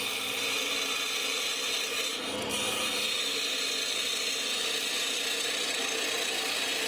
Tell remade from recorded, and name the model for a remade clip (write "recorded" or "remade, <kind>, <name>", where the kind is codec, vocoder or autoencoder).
recorded